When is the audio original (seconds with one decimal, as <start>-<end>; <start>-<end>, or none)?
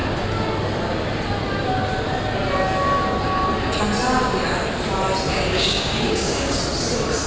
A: 0.0-5.3; 6.6-7.3